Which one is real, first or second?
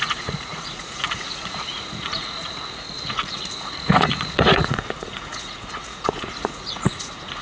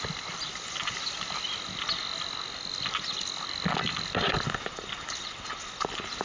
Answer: second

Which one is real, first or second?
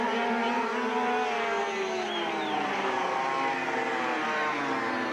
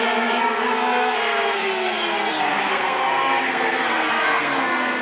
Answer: first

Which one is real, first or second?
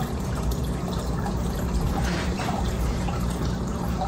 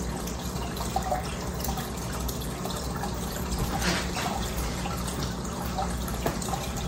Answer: second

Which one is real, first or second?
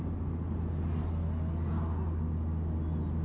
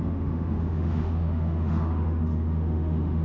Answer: first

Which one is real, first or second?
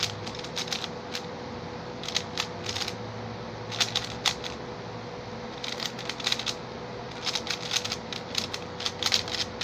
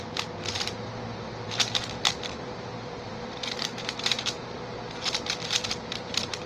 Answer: first